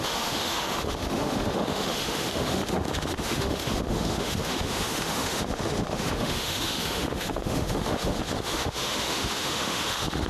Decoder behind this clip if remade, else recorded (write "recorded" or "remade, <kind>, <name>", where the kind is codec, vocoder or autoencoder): remade, autoencoder, DAC-VAE